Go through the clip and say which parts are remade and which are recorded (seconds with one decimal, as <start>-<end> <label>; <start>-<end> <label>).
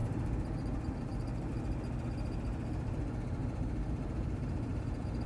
0.0-1.5 remade; 1.5-3.4 recorded; 3.4-4.8 remade; 4.8-5.3 recorded